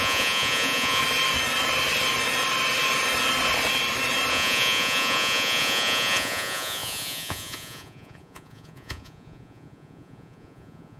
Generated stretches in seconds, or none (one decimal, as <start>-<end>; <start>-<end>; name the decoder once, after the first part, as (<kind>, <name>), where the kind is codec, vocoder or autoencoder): 0.0-1.0 (vocoder, Vocos); 4.3-11.0